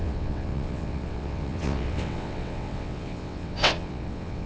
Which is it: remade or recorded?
remade